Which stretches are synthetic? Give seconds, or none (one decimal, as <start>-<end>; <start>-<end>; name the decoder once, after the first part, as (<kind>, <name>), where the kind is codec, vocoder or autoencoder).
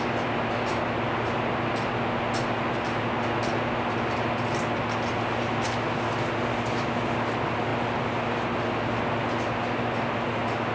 none